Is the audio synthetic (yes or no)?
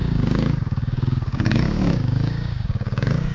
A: yes